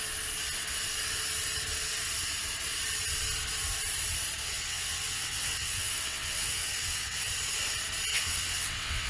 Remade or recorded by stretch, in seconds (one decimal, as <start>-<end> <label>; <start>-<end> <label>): 0.0-4.4 recorded; 4.4-7.3 remade; 7.3-8.1 recorded; 8.1-9.1 remade